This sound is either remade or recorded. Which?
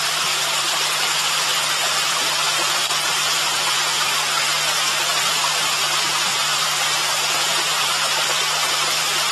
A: remade